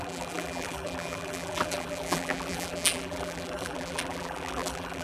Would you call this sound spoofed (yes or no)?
yes